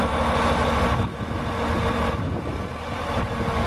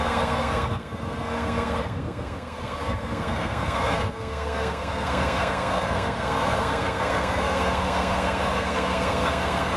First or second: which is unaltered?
first